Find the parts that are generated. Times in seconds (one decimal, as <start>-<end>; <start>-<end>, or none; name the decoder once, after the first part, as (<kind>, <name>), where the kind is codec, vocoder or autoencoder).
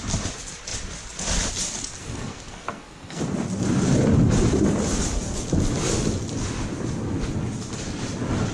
2.0-3.2 (codec, SNAC)